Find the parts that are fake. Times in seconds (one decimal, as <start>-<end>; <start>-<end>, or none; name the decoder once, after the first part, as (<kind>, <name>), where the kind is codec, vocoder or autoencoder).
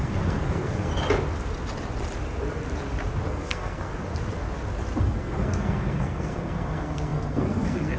0.0-0.9 (codec, SNAC); 3.3-3.9; 5.0-8.0